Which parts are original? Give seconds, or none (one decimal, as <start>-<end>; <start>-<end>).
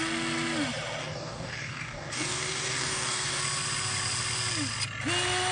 0.0-1.0; 3.4-5.5